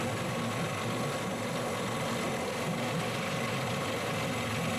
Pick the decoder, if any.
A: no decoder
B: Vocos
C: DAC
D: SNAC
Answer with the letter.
A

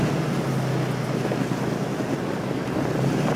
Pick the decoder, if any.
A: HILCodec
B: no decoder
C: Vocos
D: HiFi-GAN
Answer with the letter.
B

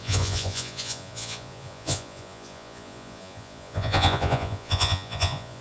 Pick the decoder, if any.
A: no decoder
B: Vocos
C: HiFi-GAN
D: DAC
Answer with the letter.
B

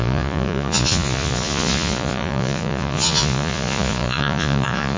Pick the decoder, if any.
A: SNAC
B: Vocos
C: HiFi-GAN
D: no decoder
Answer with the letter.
B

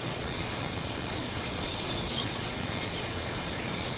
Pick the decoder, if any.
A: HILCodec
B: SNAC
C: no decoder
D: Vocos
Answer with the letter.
D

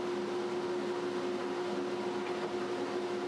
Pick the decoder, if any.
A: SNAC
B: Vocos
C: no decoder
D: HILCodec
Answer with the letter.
C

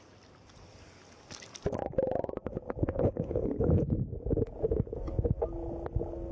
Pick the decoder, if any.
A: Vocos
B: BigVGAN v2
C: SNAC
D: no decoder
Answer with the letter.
D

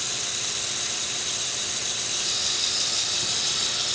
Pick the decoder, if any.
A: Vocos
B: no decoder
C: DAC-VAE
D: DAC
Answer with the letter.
B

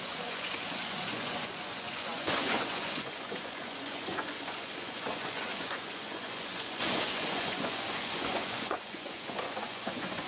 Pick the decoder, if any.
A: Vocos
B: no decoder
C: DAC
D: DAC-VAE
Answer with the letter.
A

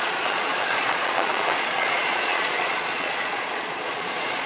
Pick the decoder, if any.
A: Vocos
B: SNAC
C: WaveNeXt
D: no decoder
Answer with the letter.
A